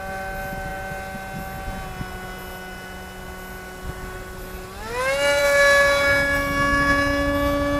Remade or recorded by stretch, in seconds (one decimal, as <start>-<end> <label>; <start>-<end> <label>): 0.0-7.8 recorded